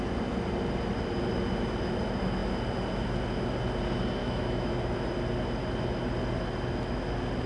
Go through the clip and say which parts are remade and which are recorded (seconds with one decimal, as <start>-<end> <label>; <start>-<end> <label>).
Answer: 0.0-4.2 recorded; 4.2-4.7 remade; 4.7-7.5 recorded